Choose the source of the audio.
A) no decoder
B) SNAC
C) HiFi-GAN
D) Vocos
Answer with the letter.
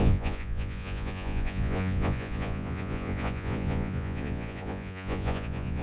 D